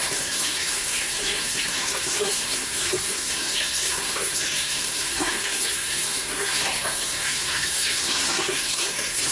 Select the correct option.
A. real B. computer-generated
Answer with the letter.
B